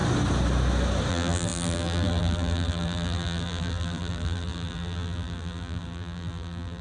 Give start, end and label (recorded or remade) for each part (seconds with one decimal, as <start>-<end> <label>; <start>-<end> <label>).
0.0-1.1 recorded; 1.1-6.8 remade